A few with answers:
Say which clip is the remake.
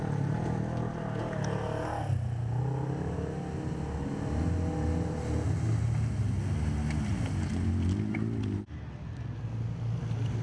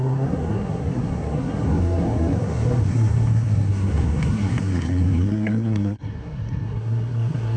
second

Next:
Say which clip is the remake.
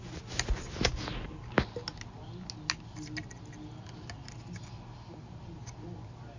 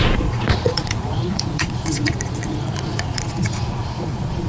second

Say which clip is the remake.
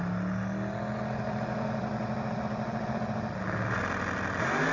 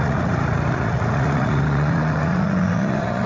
second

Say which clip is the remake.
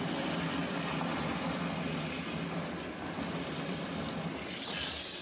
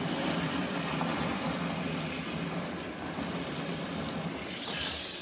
second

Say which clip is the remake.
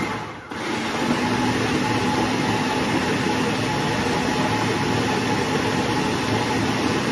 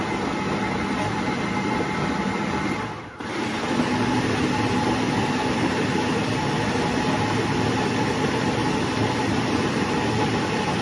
second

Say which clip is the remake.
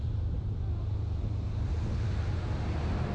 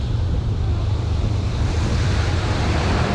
second